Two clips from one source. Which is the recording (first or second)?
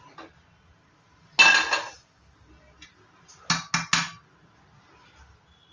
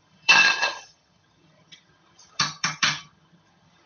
first